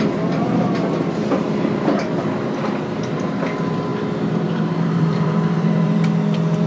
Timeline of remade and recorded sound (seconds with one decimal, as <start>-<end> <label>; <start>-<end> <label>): 0.0-3.9 recorded; 3.9-6.7 remade